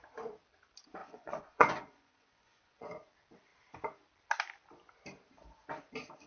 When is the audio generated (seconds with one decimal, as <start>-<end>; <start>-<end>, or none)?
1.0-2.9